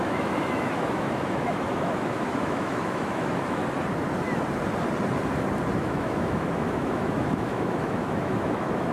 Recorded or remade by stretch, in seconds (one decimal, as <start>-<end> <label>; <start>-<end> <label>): 0.0-3.6 remade; 3.6-5.8 recorded; 5.8-8.9 remade